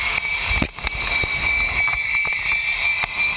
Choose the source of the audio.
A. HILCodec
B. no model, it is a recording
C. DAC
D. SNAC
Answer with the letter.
B